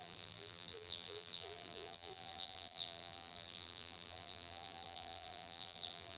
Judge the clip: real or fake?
fake